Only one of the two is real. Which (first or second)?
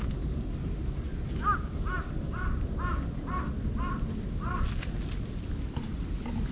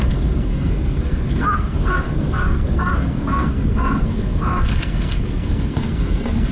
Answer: first